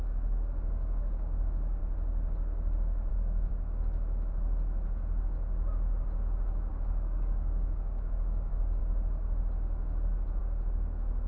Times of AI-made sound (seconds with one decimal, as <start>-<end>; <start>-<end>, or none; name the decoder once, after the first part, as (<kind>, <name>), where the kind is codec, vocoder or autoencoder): 0.0-1.8 (codec, DAC); 3.1-3.5; 6.7-8.8; 10.4-11.3